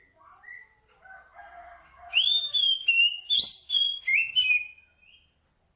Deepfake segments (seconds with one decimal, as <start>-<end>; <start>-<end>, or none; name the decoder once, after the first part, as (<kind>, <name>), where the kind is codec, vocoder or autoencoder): none